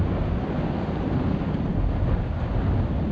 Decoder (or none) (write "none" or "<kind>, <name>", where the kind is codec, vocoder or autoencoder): none